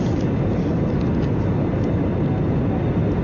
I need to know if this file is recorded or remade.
recorded